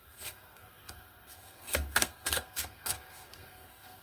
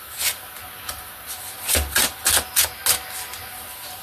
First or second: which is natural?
second